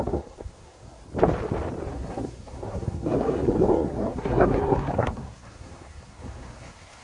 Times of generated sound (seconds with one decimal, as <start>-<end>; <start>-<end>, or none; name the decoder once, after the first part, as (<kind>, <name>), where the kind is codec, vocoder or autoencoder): 0.0-1.0 (codec, SNAC); 1.9-7.0